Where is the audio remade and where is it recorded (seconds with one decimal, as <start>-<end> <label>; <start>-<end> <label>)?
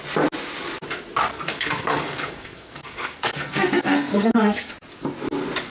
0.0-1.3 recorded; 1.3-4.7 remade; 4.7-5.7 recorded